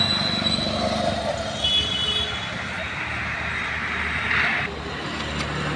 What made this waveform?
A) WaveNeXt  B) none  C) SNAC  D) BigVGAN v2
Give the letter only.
B